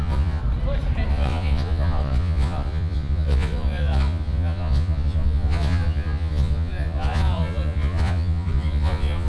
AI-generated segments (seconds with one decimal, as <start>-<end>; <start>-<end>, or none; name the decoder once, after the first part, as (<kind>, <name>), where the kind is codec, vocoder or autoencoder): 0.0-0.4 (vocoder, Vocos); 1.1-9.3